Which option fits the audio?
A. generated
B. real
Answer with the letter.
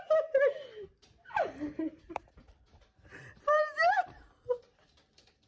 A